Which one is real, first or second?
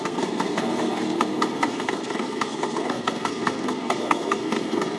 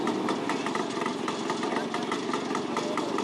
second